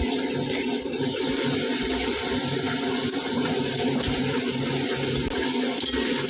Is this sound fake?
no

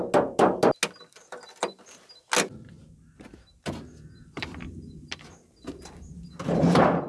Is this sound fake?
no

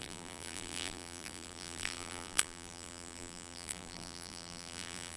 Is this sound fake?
yes